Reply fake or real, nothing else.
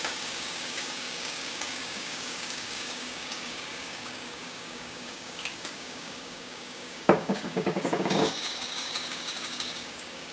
fake